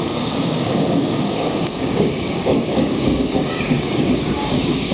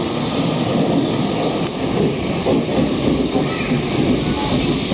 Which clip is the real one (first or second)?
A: second